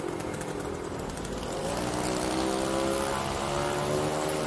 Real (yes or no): yes